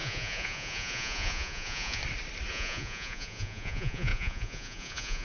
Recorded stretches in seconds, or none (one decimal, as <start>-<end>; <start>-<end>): 2.0-2.5